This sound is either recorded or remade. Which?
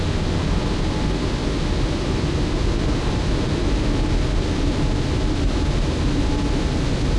recorded